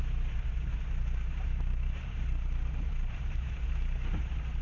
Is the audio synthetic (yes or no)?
yes